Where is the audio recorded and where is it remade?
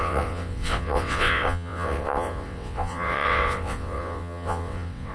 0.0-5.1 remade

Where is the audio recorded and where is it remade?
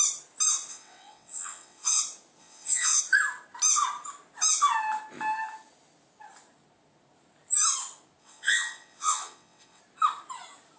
0.0-0.7 recorded; 0.7-2.0 remade; 2.0-2.4 recorded; 2.4-3.0 remade; 3.0-8.2 recorded; 8.2-9.8 remade; 9.8-10.8 recorded